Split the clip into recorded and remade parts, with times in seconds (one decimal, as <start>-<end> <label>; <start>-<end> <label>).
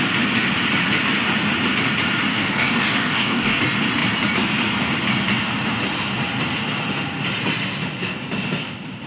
0.0-2.3 recorded; 2.3-3.6 remade; 3.6-9.1 recorded